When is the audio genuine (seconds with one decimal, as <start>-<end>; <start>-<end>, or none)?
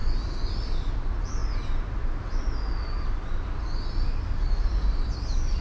0.0-0.9; 1.4-4.4